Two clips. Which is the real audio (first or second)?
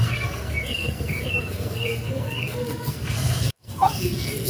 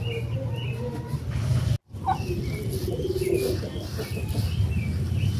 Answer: second